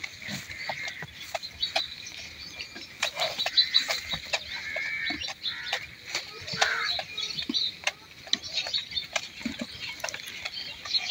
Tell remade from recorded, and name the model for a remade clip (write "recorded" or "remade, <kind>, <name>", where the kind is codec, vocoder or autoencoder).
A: recorded